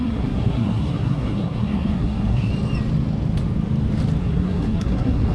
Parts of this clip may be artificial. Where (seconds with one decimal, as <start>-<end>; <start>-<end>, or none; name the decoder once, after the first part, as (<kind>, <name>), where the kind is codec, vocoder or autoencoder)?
0.0-2.5 (codec, SNAC); 4.2-5.3